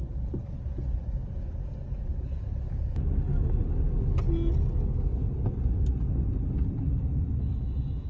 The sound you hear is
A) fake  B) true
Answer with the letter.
B